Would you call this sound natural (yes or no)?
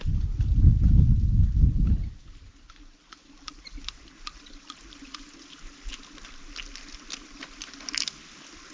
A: yes